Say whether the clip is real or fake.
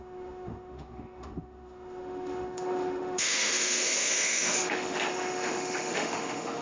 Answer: fake